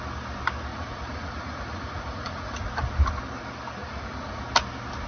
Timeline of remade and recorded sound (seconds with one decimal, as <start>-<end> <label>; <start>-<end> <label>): 0.0-0.7 recorded; 0.7-2.6 remade; 2.6-3.8 recorded; 3.8-4.4 remade; 4.4-5.1 recorded